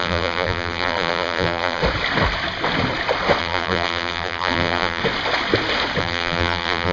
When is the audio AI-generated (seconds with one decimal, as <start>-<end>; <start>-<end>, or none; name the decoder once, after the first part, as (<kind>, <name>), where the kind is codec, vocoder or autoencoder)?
0.0-1.8 (vocoder, BigVGAN v2); 3.4-5.0; 6.0-6.9